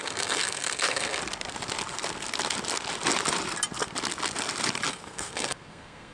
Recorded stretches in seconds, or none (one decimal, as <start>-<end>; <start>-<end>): 1.2-4.9